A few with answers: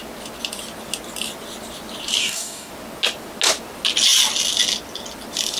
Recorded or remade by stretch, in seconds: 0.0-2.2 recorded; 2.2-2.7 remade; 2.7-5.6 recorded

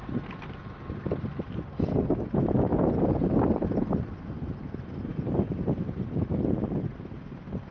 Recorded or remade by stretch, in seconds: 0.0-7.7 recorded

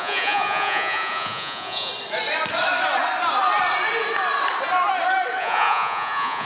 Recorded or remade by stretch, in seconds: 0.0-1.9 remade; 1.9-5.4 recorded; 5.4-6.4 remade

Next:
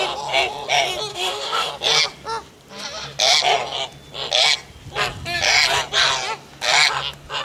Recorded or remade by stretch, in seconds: 0.0-1.1 recorded; 1.1-1.7 remade; 1.7-7.4 recorded